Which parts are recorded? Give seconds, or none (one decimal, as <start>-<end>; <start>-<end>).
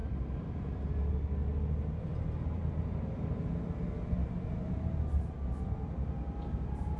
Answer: 1.1-7.0